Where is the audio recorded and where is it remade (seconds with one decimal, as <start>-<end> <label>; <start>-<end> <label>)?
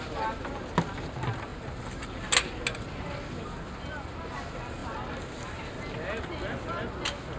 0.0-7.4 recorded